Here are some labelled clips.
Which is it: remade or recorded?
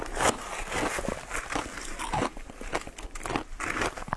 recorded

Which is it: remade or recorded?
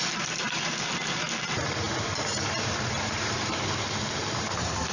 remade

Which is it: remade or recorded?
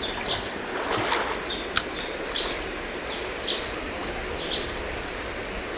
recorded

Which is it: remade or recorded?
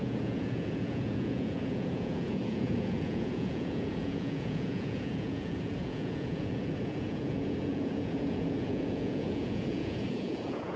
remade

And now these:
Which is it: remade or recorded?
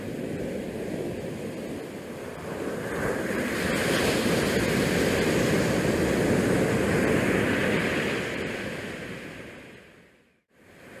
recorded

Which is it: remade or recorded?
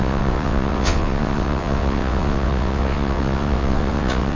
remade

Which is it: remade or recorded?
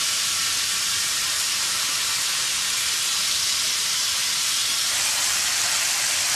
recorded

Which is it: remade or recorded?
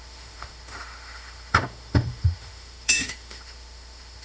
remade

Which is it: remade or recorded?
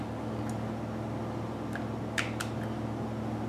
recorded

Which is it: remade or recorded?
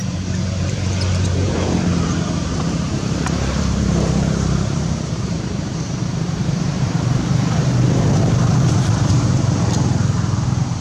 remade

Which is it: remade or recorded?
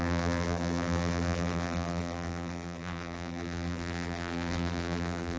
remade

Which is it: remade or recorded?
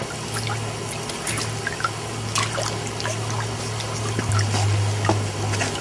recorded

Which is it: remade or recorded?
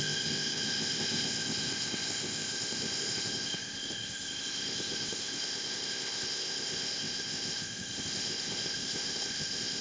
remade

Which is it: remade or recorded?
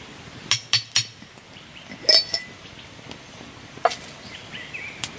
recorded